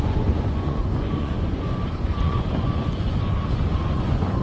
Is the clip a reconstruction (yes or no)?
yes